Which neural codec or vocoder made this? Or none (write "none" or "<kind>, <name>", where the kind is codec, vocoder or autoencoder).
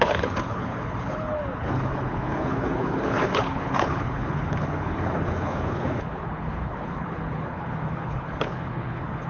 codec, HILCodec